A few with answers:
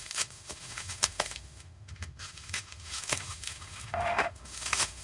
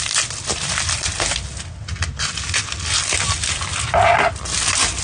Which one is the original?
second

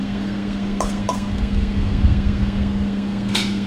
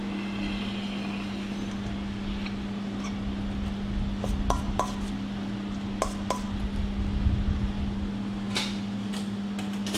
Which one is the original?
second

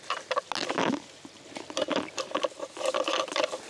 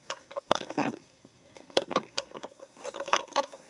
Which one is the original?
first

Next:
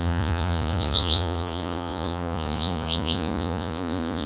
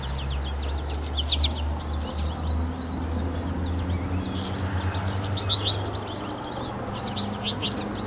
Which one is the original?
second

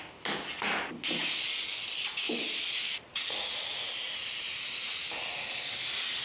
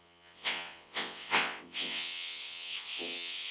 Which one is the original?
first